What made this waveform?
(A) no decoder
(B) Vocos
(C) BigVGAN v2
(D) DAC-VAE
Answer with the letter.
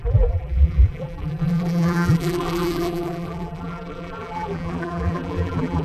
C